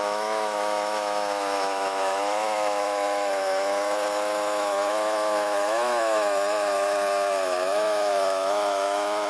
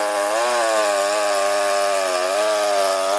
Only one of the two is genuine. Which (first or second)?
second